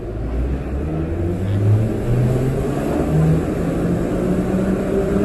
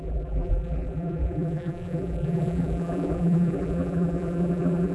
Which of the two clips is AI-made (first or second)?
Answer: second